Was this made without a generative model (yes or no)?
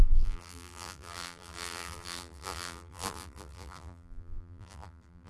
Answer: no